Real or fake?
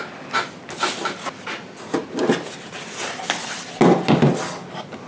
real